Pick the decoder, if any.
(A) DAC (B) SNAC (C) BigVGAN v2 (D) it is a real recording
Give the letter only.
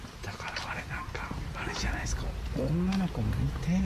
D